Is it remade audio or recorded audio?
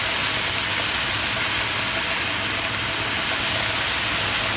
recorded